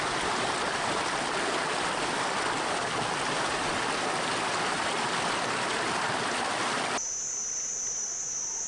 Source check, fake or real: real